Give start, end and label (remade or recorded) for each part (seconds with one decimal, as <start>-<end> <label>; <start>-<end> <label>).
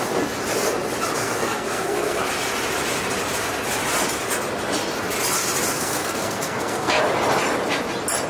0.0-1.2 recorded; 1.2-2.3 remade; 2.3-5.7 recorded; 5.7-7.0 remade; 7.0-8.3 recorded